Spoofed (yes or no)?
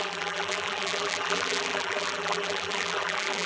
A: yes